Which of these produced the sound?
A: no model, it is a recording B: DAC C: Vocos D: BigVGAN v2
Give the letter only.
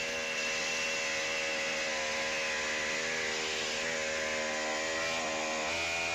A